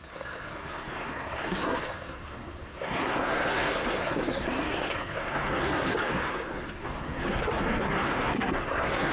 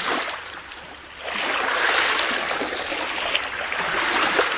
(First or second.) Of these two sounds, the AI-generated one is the first